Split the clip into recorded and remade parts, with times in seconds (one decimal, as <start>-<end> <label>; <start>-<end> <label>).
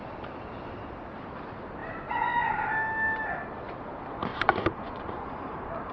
0.0-1.8 recorded; 1.8-2.5 remade; 2.5-4.3 recorded; 4.3-5.5 remade; 5.5-5.9 recorded